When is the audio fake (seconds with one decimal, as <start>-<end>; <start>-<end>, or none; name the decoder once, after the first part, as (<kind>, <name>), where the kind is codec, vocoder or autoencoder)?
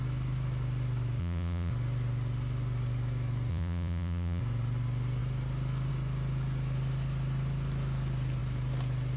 1.2-1.7 (vocoder, Vocos); 3.5-4.4